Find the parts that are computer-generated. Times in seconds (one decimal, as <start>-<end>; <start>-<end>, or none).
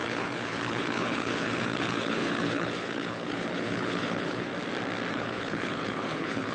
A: 0.0-4.5; 5.1-6.5